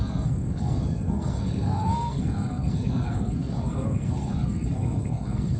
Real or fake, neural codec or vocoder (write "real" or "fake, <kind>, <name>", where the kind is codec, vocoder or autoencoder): fake, codec, SNAC